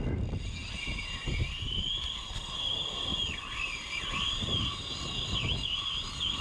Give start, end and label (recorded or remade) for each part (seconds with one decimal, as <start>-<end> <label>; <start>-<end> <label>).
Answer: 0.0-6.4 recorded